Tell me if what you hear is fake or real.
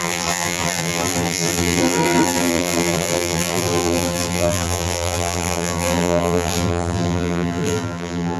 fake